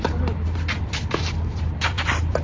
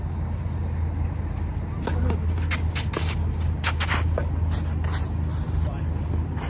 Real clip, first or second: second